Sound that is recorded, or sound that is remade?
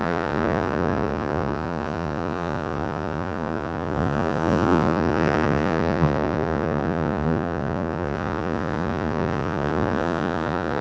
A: remade